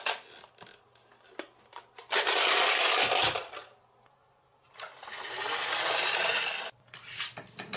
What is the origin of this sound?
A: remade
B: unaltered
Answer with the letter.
B